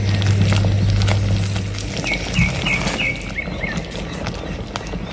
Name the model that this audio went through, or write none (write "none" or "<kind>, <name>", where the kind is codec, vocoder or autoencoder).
none